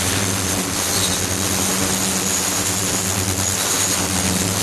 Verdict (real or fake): real